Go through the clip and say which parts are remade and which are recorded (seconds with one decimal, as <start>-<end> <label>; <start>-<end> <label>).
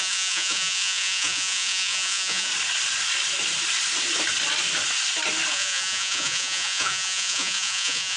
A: 0.0-2.5 remade; 2.5-5.5 recorded; 5.5-8.2 remade